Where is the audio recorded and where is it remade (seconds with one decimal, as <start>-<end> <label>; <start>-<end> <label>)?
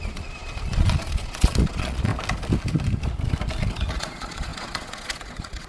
0.0-2.1 remade; 2.1-3.9 recorded; 3.9-5.7 remade